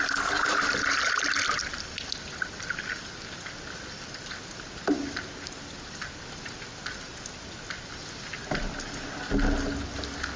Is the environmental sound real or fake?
real